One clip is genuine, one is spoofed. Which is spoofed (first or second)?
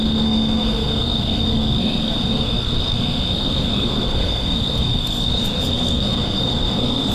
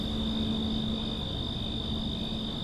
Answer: first